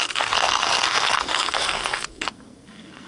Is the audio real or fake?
fake